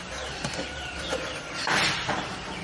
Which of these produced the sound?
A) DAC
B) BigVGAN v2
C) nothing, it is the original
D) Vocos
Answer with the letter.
B